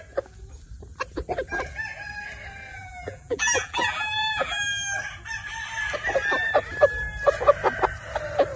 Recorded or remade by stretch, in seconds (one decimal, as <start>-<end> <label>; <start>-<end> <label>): 0.0-2.7 recorded; 2.7-4.6 remade; 4.6-8.6 recorded